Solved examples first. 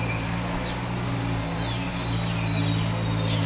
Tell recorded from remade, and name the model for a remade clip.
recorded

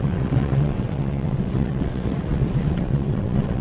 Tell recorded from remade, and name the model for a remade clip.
remade, vocoder, WaveNeXt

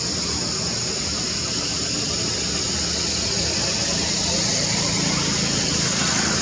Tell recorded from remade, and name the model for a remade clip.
recorded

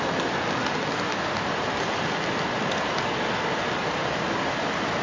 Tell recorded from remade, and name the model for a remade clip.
recorded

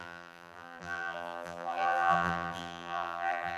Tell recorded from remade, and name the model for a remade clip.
remade, vocoder, BigVGAN v2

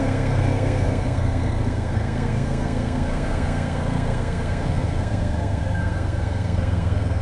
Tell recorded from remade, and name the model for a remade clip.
remade, codec, SNAC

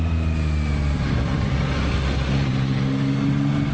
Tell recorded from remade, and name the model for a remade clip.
recorded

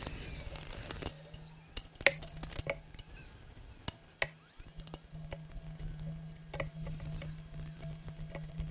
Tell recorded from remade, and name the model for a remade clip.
recorded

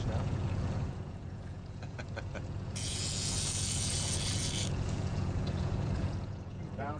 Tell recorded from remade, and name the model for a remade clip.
remade, vocoder, Vocos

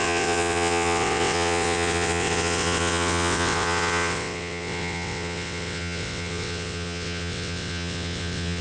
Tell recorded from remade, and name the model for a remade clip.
remade, vocoder, WaveNeXt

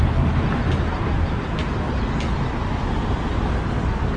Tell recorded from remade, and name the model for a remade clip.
recorded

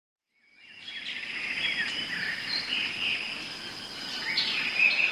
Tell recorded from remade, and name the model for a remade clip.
recorded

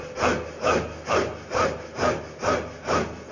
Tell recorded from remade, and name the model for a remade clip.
recorded